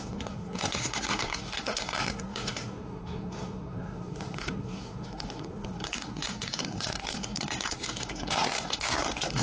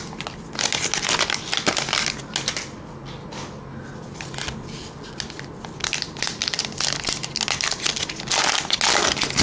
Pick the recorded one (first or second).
second